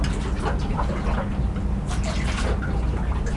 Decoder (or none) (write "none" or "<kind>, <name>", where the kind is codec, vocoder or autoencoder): none